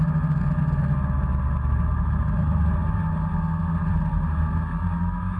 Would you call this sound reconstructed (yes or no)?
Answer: no